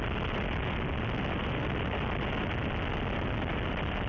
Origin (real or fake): real